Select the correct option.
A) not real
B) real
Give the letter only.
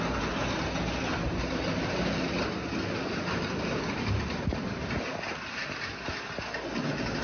B